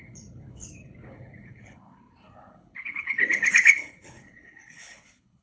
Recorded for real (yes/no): no